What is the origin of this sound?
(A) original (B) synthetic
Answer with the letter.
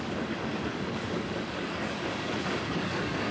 B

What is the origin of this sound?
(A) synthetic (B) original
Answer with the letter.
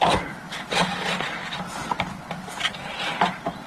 B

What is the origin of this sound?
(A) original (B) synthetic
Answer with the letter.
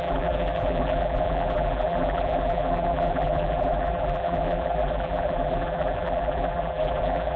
B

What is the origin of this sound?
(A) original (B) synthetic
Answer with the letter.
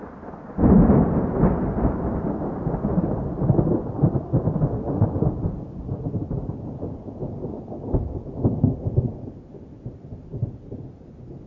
A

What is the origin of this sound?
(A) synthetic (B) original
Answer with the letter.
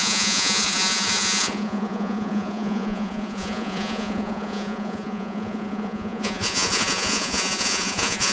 A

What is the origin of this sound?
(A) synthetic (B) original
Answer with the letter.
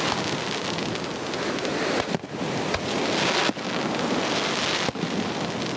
B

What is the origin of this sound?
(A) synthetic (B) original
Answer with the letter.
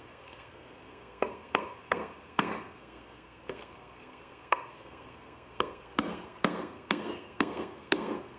A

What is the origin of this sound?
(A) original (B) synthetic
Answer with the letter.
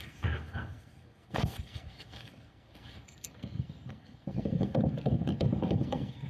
B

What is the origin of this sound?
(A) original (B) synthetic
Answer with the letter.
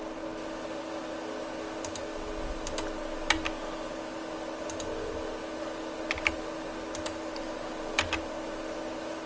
A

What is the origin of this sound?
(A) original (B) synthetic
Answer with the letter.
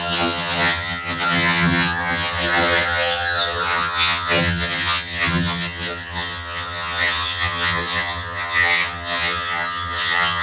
B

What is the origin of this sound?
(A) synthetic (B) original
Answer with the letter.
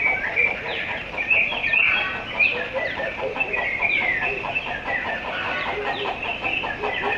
A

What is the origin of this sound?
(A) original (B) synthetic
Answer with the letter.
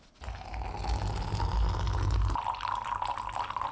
A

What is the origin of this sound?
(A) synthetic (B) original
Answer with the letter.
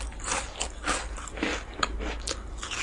B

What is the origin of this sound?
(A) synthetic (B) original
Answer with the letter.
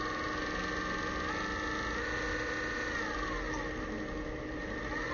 B